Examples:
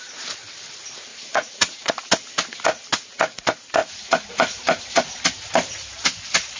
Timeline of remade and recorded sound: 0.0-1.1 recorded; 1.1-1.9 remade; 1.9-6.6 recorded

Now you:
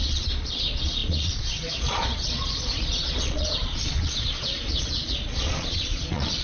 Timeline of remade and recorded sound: 0.0-6.4 remade

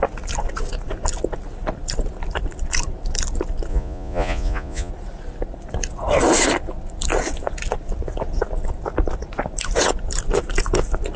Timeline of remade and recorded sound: 0.0-3.7 recorded; 3.7-4.9 remade; 4.9-11.2 recorded

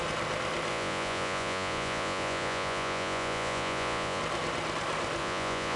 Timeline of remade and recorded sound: 0.0-0.7 recorded; 0.7-4.2 remade; 4.2-5.2 recorded; 5.2-5.8 remade

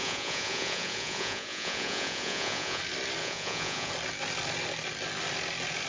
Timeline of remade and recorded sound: 0.0-2.8 remade; 2.8-3.2 recorded; 3.2-3.9 remade; 3.9-5.9 recorded

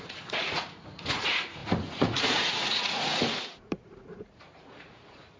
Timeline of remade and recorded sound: 0.0-5.4 remade

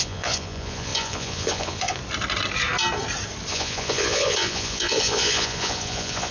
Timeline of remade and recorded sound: 0.0-2.0 remade; 2.0-3.5 recorded; 3.5-6.3 remade